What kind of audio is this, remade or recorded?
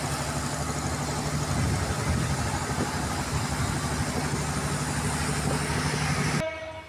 recorded